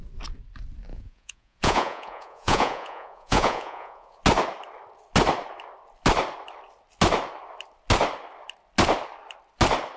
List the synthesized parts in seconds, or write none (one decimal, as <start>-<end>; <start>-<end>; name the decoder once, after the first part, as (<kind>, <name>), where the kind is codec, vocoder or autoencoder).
0.9-4.2 (vocoder, Vocos)